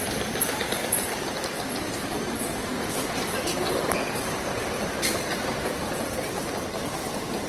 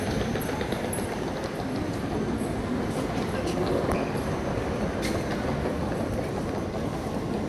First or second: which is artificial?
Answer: first